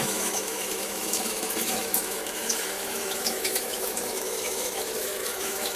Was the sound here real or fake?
fake